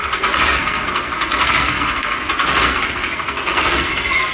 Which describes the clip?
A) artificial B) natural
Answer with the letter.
A